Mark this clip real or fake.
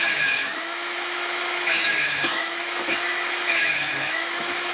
fake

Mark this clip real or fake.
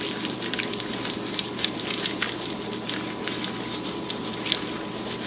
real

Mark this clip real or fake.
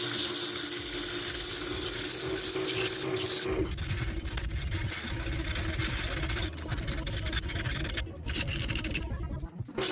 real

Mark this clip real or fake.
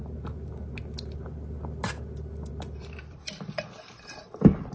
real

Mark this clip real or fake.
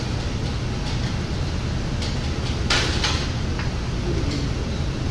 real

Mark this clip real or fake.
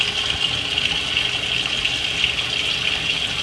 real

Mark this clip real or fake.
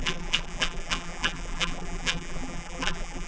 fake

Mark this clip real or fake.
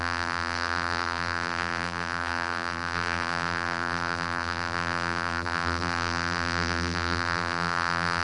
fake